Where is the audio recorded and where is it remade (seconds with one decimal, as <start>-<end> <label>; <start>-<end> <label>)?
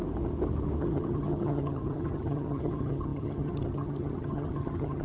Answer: 0.0-0.8 recorded; 0.8-5.0 remade